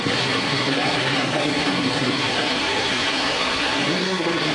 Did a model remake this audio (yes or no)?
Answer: yes